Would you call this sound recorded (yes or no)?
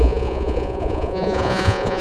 no